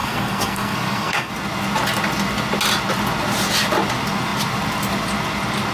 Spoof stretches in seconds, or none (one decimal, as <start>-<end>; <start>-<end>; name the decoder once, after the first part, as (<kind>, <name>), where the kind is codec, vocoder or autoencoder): 0.0-1.3 (codec, SNAC)

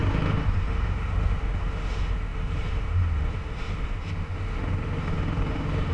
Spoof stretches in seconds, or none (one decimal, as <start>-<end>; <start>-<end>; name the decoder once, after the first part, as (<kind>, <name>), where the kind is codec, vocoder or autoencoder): 0.0-5.9 (autoencoder, DAC-VAE)

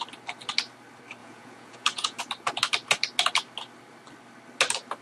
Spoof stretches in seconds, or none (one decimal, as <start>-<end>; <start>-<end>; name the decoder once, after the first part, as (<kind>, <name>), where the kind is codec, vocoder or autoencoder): 1.2-2.2 (vocoder, Vocos)

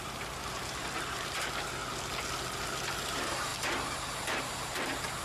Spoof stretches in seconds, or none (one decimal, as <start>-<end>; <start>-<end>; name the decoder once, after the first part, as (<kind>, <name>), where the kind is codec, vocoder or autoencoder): 0.0-1.8 (vocoder, BigVGAN v2); 3.0-3.5; 4.4-5.2

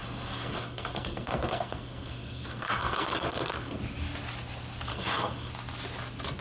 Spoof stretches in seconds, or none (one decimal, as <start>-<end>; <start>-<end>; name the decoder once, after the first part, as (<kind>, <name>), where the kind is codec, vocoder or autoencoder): 0.0-3.8 (codec, SNAC); 4.9-5.5

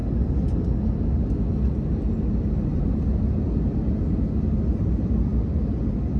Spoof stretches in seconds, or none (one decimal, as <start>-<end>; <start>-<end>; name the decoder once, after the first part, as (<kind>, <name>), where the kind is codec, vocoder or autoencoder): none

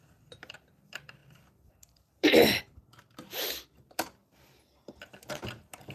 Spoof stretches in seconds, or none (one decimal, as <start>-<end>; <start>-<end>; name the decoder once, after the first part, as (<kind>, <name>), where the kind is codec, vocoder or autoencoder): 0.0-4.2 (vocoder, BigVGAN v2)